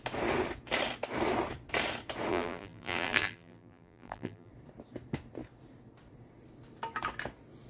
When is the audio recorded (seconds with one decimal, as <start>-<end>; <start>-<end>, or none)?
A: 0.0-2.3; 4.5-7.7